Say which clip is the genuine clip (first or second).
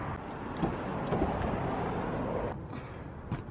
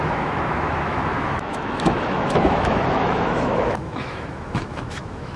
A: first